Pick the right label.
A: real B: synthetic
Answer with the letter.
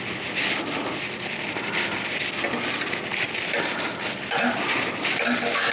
A